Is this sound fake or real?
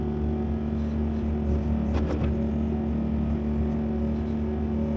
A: real